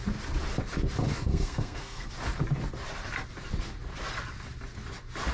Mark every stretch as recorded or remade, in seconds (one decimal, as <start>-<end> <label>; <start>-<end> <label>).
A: 0.0-1.3 recorded; 1.3-2.1 remade; 2.1-5.3 recorded